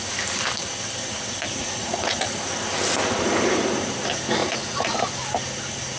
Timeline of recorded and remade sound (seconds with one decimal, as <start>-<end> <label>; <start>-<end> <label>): 0.0-1.6 recorded; 1.6-2.3 remade; 2.3-4.4 recorded; 4.4-5.0 remade; 5.0-6.0 recorded